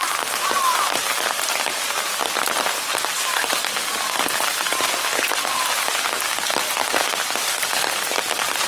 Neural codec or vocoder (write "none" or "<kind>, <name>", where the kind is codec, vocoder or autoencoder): none